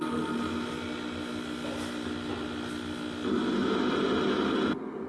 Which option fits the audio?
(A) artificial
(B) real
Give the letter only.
B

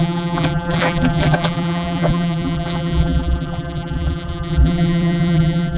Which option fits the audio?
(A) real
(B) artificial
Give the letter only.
B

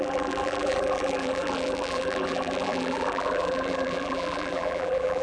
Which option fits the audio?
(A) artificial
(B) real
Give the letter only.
A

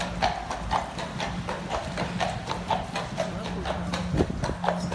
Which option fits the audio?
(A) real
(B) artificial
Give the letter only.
A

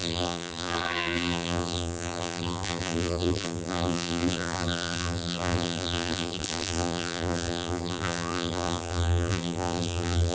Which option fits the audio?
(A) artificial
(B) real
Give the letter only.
A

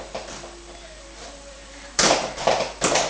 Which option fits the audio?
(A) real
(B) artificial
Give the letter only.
B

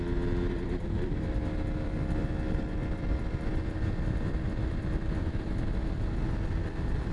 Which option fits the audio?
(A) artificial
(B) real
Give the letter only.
A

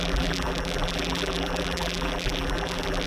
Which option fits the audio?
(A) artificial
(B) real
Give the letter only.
A